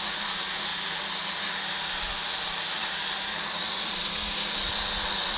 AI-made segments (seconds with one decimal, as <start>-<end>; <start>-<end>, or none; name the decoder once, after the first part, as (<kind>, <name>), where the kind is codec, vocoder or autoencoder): 0.7-3.9 (vocoder, BigVGAN v2)